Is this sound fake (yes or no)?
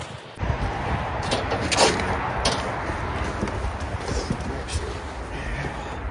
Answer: no